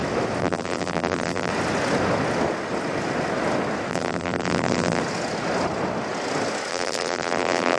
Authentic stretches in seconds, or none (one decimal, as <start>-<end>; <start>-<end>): 0.0-0.4; 1.5-3.9; 5.0-6.7

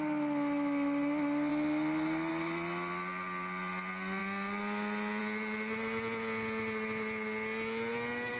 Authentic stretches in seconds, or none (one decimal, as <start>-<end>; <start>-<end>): 0.0-8.4

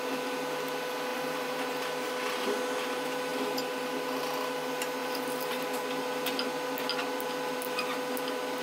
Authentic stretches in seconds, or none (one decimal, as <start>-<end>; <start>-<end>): 0.0-1.1; 1.6-5.0; 5.6-8.6

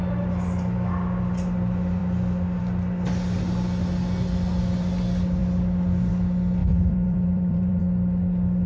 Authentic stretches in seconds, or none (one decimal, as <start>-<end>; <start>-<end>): 0.0-6.6; 7.8-8.7

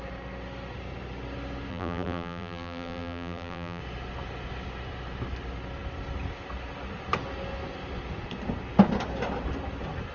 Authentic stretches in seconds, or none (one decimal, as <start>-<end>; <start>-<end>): 0.0-1.7; 3.8-10.1